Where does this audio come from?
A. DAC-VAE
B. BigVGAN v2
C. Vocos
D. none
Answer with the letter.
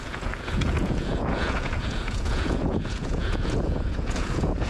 C